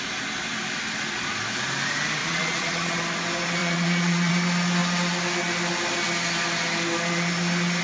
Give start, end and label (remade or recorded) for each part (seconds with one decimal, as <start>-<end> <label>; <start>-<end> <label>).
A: 0.0-2.2 recorded; 2.2-3.0 remade; 3.0-3.6 recorded; 3.6-4.3 remade; 4.3-7.8 recorded